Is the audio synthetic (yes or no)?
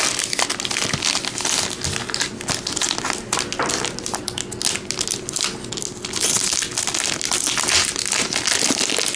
no